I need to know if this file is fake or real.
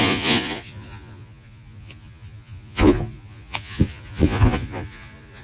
fake